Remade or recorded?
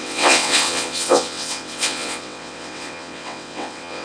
remade